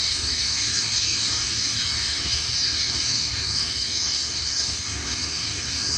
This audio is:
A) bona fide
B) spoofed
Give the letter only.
B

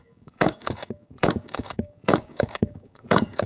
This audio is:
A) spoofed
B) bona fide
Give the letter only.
A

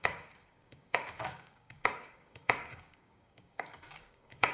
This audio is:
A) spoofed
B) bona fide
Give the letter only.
A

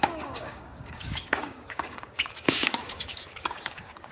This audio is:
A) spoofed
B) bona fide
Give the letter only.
A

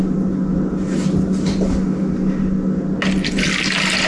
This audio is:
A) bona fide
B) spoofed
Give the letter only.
A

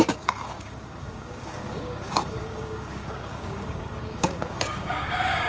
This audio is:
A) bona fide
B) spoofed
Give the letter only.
B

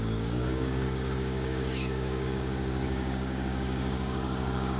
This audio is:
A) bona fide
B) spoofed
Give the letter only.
B